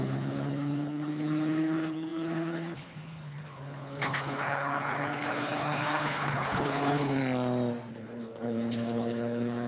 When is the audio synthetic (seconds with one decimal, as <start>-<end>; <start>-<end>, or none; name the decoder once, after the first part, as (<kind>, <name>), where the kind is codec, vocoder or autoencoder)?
0.0-7.2 (codec, HILCodec); 7.9-9.7